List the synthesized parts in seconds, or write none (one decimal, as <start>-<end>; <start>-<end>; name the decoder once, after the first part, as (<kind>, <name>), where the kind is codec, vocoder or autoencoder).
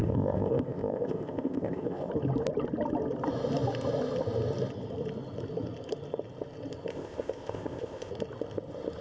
0.0-2.1 (codec, ZipCodec); 6.9-8.1